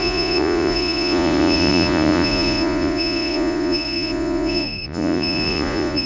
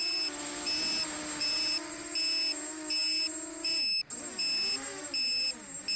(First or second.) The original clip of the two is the second